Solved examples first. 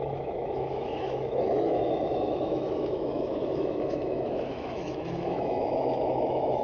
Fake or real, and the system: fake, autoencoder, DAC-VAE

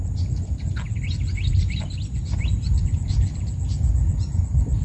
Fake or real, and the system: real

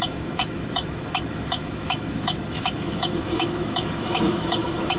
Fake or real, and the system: fake, autoencoder, DAC-VAE